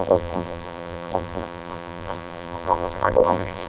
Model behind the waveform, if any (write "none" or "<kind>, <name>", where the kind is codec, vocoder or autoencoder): vocoder, BigVGAN v2